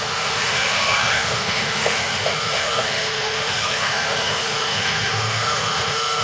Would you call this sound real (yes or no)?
no